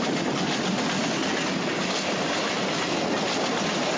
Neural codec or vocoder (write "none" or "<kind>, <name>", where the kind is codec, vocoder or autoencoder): none